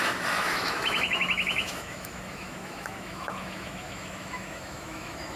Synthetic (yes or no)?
yes